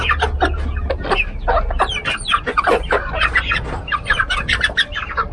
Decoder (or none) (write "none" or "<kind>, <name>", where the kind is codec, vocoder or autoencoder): none